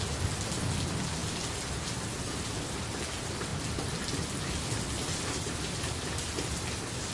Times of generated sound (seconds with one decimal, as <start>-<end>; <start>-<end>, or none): none